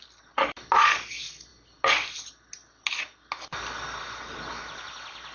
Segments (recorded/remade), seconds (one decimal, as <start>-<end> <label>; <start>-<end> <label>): 0.0-5.3 recorded